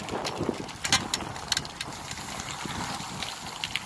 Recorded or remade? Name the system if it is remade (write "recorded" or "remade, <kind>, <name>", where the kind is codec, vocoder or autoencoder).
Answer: recorded